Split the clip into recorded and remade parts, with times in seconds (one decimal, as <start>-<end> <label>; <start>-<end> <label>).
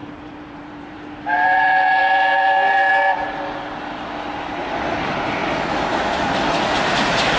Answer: 0.0-1.0 remade; 1.0-7.4 recorded